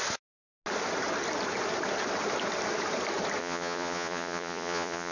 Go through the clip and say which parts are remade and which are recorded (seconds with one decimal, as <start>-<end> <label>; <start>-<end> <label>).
0.0-3.4 recorded; 3.4-5.1 remade

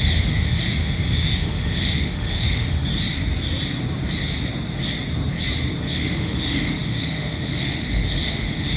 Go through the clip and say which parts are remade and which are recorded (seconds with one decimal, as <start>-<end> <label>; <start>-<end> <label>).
0.0-2.9 remade; 2.9-5.8 recorded; 5.8-8.8 remade